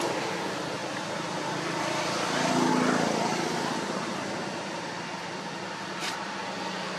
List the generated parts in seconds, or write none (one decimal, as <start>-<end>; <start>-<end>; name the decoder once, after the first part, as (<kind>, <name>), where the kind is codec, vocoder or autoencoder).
none